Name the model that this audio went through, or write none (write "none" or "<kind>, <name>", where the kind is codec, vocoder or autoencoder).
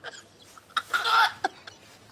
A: none